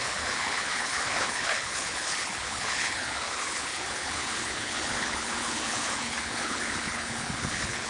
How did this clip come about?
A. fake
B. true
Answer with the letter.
A